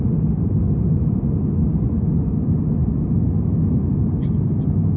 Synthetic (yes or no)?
no